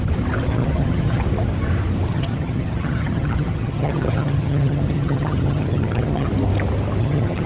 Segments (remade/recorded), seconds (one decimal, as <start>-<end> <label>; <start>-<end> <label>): 0.0-0.5 recorded; 0.5-1.2 remade; 1.2-2.1 recorded; 2.1-6.3 remade; 6.3-7.0 recorded; 7.0-7.5 remade

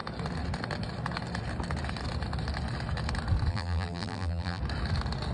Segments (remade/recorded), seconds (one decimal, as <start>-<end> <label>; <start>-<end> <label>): 0.0-3.5 recorded; 3.5-4.6 remade; 4.6-5.3 recorded

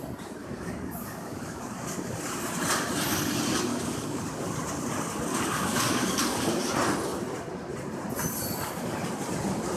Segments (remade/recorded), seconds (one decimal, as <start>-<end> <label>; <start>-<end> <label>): 0.0-0.4 recorded; 0.4-2.2 remade; 2.2-3.7 recorded; 3.7-4.2 remade; 4.2-5.3 recorded; 5.3-6.5 remade; 6.5-9.8 recorded

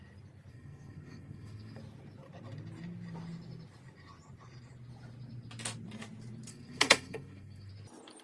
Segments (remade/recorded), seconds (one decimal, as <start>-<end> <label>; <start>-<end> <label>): 0.0-0.5 recorded; 0.5-1.8 remade; 1.8-6.5 recorded; 6.5-7.7 remade; 7.7-8.2 recorded

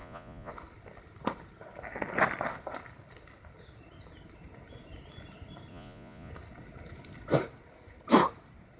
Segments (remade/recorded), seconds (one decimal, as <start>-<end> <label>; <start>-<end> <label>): 0.0-0.5 remade; 0.5-5.7 recorded; 5.7-6.3 remade; 6.3-8.8 recorded